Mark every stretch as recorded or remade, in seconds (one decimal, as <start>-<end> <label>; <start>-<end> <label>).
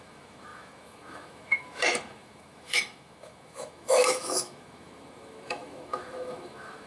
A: 0.0-6.9 remade